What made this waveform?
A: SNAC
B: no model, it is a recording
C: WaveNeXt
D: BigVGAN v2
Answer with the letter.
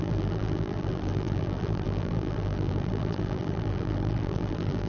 D